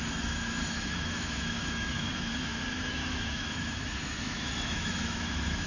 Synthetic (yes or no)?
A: yes